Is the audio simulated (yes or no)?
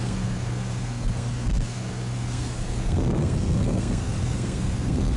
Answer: yes